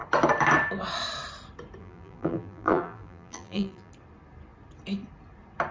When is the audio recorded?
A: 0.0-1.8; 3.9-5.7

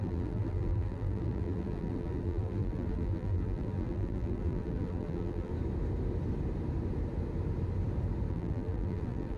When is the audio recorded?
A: 5.5-8.3

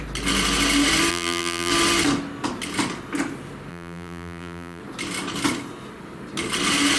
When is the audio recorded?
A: 0.0-1.1; 1.7-3.7; 4.8-7.0

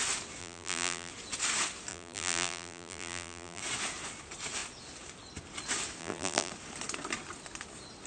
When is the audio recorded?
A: 0.0-0.4; 1.1-1.9; 3.6-6.0; 6.5-8.1